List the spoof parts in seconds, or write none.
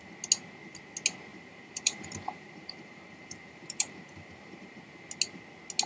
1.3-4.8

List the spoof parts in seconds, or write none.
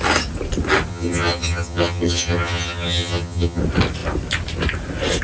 0.9-3.6